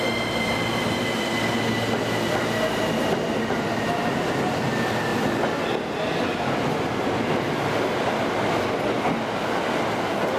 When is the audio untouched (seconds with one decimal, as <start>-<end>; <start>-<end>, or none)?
0.0-10.4